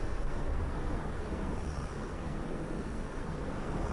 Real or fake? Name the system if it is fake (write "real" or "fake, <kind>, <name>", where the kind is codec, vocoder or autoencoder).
fake, codec, SNAC